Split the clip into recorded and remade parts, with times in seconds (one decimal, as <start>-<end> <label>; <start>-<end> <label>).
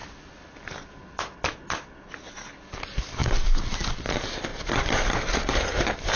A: 0.0-2.1 remade; 2.1-4.5 recorded; 4.5-5.1 remade; 5.1-6.2 recorded